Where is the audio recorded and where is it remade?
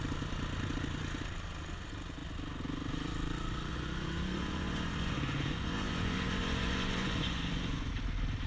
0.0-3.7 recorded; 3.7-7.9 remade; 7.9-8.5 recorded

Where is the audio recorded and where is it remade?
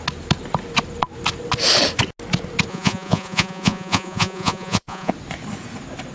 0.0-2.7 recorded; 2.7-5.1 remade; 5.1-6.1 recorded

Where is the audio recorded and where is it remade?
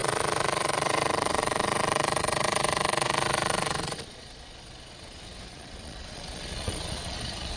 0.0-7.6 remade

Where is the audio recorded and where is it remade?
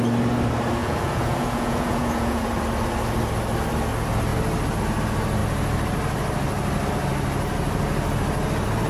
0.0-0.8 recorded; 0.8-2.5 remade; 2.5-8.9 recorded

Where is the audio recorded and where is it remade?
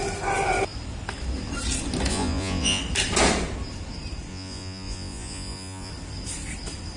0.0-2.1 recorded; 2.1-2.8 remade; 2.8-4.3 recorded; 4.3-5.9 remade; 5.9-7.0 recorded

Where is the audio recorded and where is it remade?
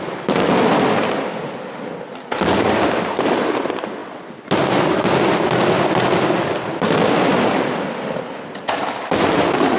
0.0-9.8 recorded